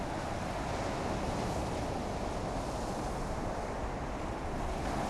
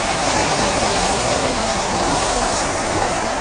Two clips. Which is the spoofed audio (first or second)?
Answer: second